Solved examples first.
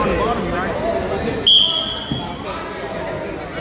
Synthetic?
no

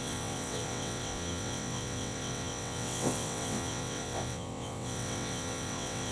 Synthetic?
yes